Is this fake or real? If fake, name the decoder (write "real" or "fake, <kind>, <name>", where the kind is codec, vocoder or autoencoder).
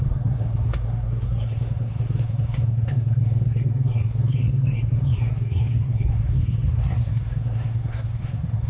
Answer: fake, codec, SNAC